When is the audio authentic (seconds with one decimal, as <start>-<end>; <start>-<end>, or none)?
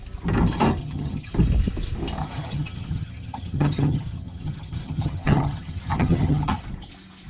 0.0-0.8; 1.3-2.2; 6.6-7.3